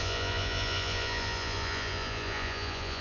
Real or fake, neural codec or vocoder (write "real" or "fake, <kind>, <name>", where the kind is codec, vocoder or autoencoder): fake, vocoder, Vocos